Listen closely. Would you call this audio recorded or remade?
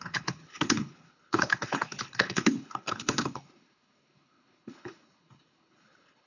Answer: remade